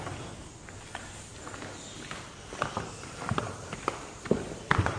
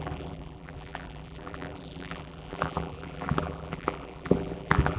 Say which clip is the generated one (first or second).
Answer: second